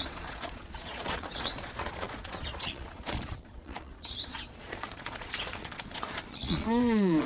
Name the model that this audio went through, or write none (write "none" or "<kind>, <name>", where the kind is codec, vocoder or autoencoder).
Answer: vocoder, Vocos